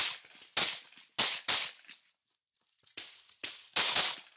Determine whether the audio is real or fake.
real